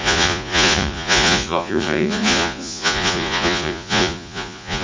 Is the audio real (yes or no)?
no